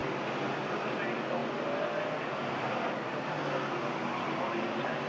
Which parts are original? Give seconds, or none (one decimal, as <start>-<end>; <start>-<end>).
0.0-5.1